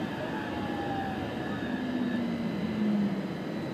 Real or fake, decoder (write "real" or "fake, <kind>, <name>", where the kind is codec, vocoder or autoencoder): real